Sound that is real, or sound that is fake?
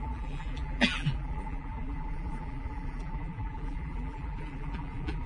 fake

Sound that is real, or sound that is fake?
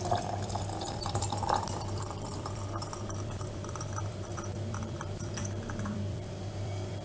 fake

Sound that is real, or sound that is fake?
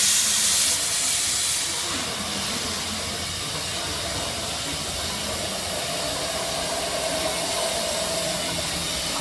real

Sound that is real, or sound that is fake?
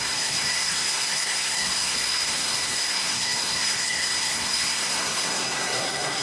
fake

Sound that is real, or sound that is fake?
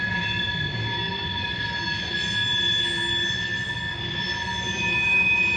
real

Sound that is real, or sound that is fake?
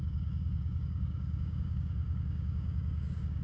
fake